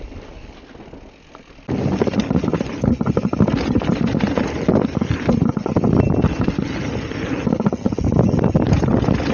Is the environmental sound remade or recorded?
recorded